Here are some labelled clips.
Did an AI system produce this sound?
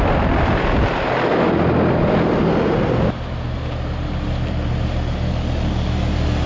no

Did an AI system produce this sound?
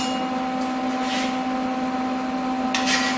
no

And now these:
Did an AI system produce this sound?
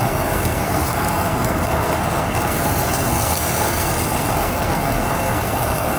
yes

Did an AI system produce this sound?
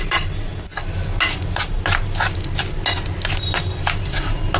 no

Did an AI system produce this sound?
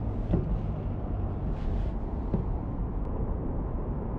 no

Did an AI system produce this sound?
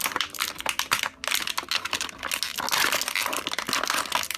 no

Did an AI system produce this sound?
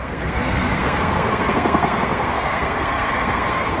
yes